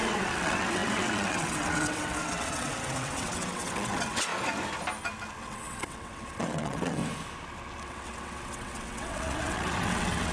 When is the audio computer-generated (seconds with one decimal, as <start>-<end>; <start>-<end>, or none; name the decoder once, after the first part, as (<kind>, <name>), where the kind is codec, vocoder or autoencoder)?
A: 0.0-4.3 (vocoder, WaveNeXt); 5.4-7.0; 7.8-10.3